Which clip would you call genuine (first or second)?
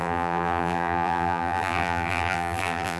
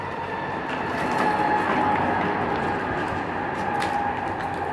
second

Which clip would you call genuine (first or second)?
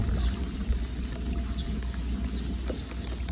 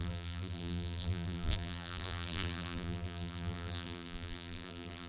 first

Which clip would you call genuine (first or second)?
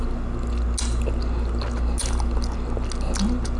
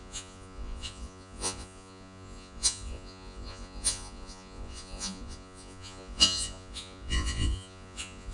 first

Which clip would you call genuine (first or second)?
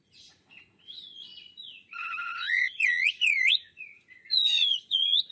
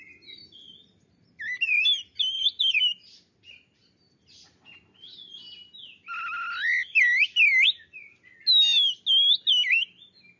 second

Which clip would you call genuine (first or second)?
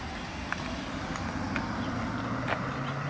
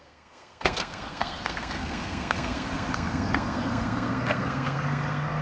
first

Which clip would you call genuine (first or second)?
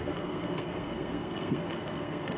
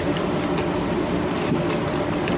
second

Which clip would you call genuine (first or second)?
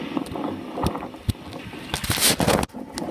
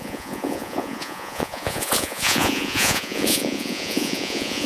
first